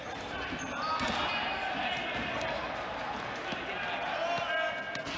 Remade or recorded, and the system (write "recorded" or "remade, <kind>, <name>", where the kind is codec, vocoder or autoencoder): recorded